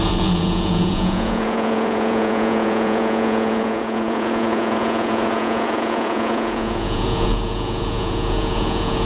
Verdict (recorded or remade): remade